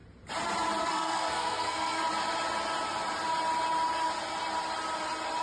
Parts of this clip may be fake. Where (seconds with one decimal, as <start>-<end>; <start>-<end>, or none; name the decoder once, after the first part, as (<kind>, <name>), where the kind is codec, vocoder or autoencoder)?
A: 0.8-2.0 (codec, SNAC)